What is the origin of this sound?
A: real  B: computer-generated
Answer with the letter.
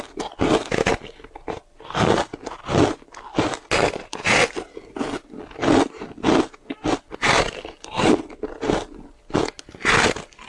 A